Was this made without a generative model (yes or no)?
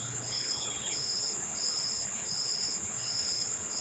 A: no